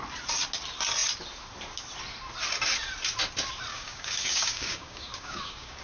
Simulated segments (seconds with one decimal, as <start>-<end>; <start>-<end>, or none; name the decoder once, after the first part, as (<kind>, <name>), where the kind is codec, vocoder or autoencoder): 3.7-5.8 (codec, DAC)